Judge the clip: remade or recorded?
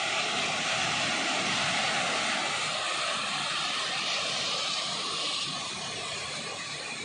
remade